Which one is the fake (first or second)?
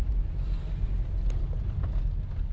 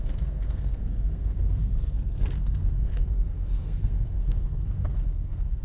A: second